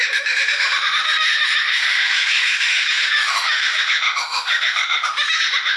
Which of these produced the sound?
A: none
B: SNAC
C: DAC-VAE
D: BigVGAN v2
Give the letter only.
C